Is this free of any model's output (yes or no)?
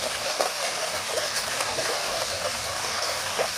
no